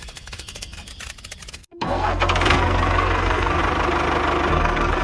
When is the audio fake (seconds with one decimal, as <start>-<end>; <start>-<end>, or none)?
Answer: 0.0-0.9; 1.5-3.6; 4.5-5.0